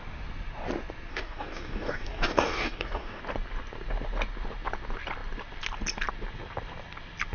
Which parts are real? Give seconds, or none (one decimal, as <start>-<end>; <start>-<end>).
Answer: 0.0-1.1; 3.2-7.3